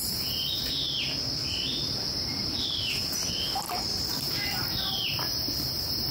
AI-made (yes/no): no